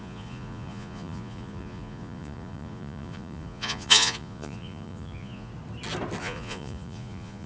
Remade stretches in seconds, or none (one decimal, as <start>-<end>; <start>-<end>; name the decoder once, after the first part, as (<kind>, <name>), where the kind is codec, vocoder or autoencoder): 0.0-5.5 (vocoder, Vocos); 6.2-7.5